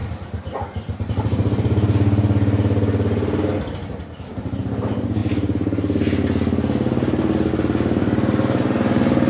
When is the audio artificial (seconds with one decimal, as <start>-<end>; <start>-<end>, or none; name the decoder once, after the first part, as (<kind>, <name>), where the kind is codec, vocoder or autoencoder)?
none